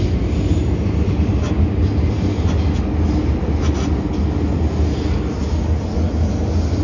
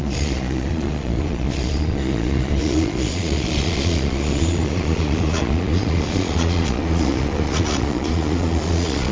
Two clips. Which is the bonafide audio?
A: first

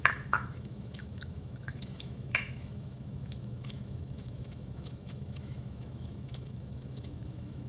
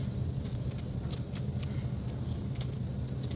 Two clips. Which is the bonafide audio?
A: second